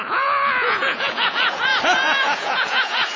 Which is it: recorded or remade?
remade